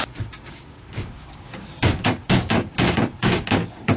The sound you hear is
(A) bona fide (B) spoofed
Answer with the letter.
B